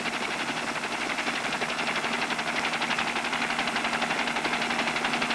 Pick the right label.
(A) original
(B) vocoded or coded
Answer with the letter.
A